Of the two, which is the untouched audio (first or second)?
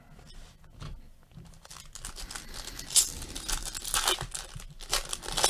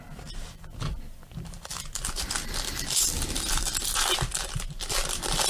first